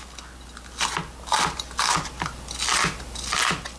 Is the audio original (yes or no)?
yes